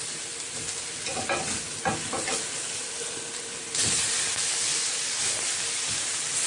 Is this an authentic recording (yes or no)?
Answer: yes